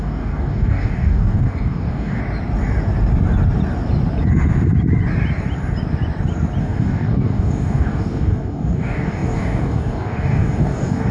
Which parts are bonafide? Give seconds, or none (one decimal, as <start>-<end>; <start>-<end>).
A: 2.2-6.6

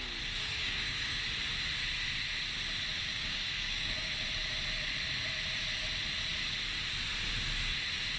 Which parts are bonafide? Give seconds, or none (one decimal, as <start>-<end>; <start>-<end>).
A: 0.0-0.5; 1.2-3.1; 4.1-8.2

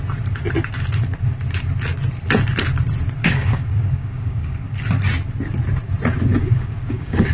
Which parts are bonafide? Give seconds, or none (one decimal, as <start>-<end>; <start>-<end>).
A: 0.0-3.2; 4.8-6.4

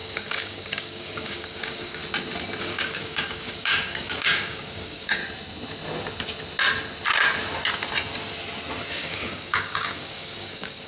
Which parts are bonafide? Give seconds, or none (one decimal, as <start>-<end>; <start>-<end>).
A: 2.0-2.6; 5.2-8.9

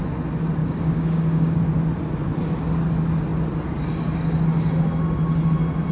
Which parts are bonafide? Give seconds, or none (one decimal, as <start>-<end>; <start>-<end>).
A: 0.0-0.6; 1.6-5.9

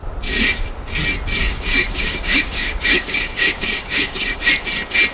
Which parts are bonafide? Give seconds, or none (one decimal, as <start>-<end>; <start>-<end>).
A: 0.0-1.4; 4.5-5.1